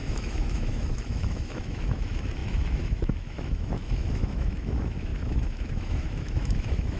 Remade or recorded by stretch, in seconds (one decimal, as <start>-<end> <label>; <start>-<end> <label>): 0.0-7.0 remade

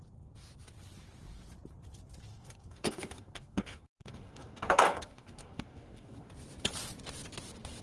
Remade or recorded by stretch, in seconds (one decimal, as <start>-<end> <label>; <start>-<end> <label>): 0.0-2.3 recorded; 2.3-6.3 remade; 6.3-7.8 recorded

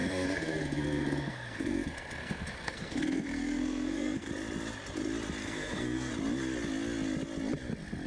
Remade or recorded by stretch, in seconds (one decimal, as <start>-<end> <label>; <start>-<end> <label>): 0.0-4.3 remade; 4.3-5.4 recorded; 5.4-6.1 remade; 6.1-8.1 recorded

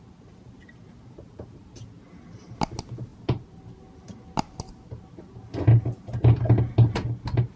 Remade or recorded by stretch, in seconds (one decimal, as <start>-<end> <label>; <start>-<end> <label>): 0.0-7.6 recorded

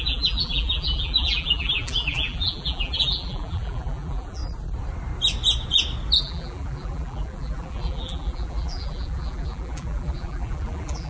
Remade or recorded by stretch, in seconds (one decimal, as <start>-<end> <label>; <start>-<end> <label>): 0.0-4.4 remade; 4.4-6.2 recorded; 6.2-11.1 remade